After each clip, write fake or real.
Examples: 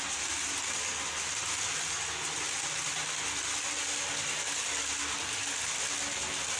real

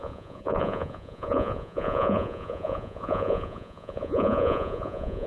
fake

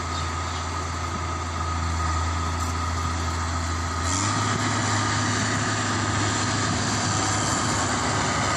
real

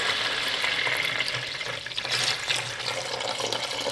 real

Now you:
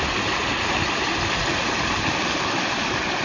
real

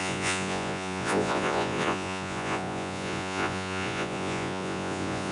fake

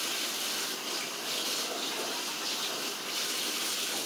real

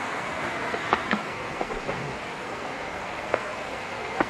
fake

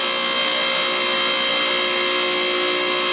real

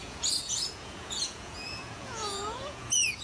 fake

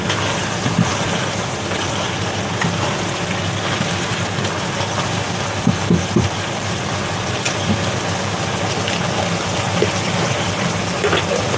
real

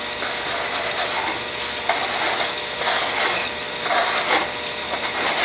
real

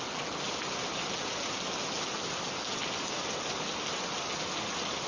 real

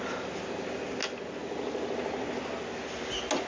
real